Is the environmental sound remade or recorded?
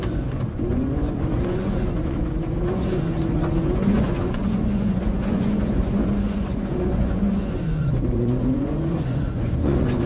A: remade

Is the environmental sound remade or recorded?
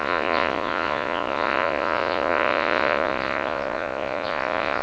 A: remade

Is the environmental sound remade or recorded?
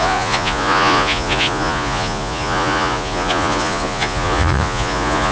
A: remade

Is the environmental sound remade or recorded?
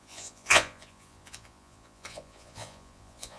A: remade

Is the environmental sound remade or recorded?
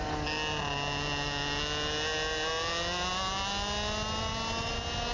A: recorded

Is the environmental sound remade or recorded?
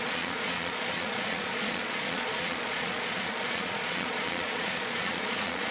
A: remade